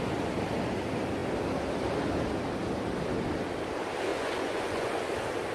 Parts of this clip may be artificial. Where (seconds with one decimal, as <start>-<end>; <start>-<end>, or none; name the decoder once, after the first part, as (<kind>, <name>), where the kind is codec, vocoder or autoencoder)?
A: 4.1-5.0 (vocoder, Vocos)